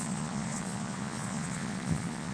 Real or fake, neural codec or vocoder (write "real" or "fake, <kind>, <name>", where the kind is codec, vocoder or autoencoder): fake, vocoder, Vocos